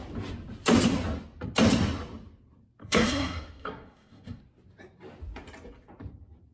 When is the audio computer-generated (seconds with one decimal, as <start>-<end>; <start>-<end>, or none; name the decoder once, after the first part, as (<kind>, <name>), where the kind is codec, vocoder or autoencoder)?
2.8-4.4 (codec, SNAC)